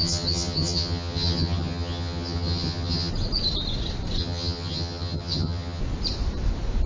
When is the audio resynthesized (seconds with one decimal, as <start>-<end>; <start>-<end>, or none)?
0.0-3.1; 4.2-5.8